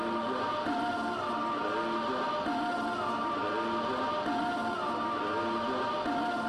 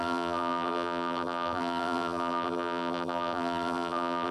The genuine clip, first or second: first